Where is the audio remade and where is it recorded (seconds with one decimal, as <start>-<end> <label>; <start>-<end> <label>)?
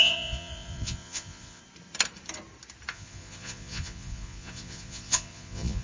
0.0-1.6 remade; 1.6-2.9 recorded; 2.9-5.8 remade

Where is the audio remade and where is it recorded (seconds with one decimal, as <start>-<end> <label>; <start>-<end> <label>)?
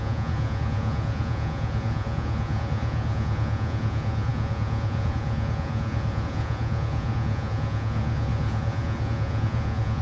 0.0-10.0 remade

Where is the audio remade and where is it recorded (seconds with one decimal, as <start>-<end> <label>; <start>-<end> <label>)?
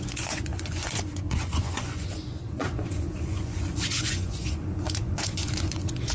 0.0-6.1 remade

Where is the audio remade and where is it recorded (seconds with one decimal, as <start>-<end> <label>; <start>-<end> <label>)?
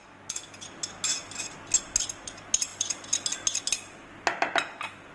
0.0-5.1 recorded